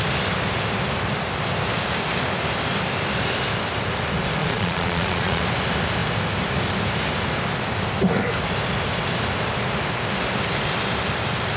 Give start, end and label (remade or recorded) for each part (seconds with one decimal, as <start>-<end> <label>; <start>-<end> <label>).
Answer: 0.0-4.4 recorded; 4.4-5.4 remade; 5.4-11.6 recorded